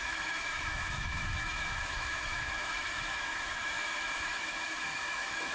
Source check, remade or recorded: remade